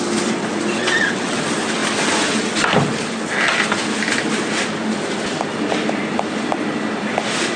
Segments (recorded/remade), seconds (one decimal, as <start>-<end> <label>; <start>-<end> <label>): 0.0-0.8 recorded; 0.8-1.4 remade; 1.4-7.6 recorded